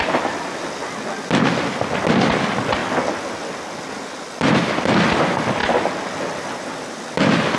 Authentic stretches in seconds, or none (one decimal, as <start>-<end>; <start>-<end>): 0.0-7.6

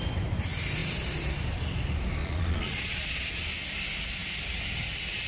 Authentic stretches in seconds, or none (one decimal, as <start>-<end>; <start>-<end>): 0.0-2.2; 3.4-5.3

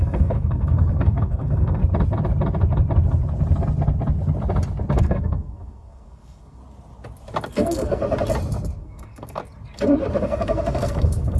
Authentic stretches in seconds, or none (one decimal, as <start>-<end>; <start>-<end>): 1.8-5.0; 6.6-7.5; 8.0-8.8; 9.4-10.2